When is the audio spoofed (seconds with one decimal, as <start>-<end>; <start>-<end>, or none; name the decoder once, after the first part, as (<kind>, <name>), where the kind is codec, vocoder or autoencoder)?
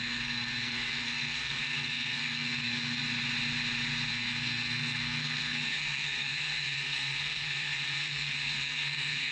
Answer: 0.0-3.0 (codec, SNAC); 4.1-9.3